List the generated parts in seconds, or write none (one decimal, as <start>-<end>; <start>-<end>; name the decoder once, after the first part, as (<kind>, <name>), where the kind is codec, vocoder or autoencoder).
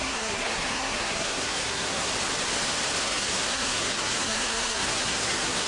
0.0-2.1 (codec, SNAC); 3.0-5.7